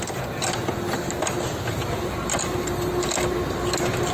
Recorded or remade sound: recorded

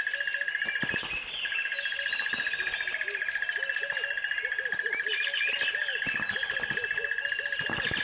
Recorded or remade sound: recorded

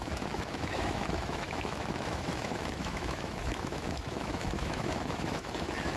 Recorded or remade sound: remade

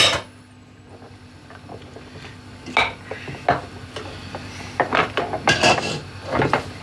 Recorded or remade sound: recorded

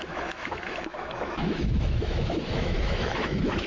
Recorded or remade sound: remade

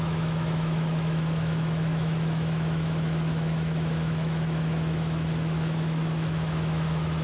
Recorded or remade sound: remade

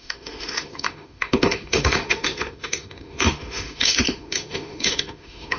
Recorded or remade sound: remade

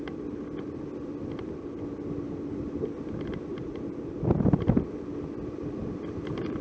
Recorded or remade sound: recorded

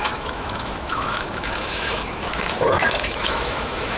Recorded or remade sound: remade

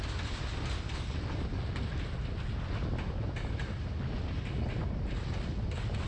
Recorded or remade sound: recorded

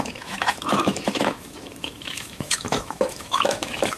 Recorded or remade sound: remade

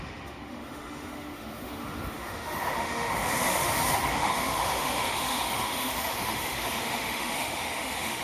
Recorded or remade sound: remade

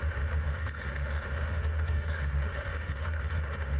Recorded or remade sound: remade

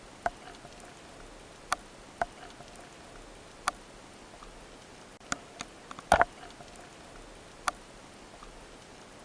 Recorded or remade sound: recorded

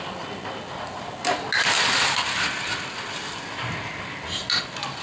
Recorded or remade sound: recorded